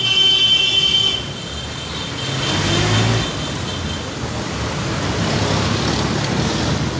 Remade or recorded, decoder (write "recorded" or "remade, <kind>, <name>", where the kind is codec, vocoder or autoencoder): recorded